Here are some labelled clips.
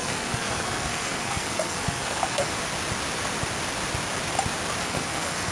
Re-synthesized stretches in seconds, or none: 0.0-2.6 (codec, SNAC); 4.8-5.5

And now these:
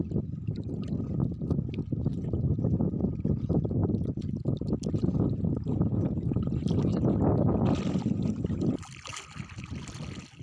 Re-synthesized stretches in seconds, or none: none

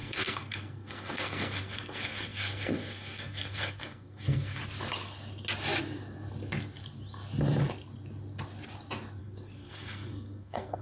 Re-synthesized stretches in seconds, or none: 0.0-4.6 (codec, SNAC); 9.2-10.8

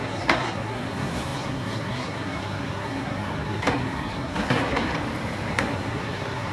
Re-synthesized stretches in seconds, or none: 0.0-4.9 (codec, SNAC); 5.5-6.5

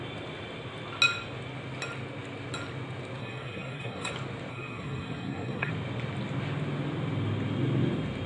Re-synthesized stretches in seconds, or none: 3.2-4.1 (codec, SNAC); 4.5-5.7

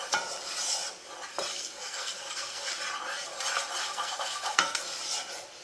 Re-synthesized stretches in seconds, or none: 1.5-2.7 (codec, SNAC); 3.8-4.8